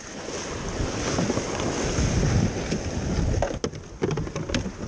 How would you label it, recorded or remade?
recorded